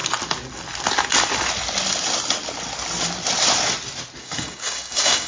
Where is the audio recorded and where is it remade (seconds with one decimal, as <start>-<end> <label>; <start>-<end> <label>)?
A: 0.0-4.2 recorded; 4.2-5.3 remade